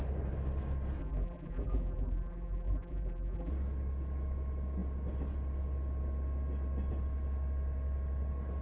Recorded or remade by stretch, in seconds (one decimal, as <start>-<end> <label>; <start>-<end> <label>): 0.0-1.0 recorded; 1.0-3.5 remade; 3.5-8.6 recorded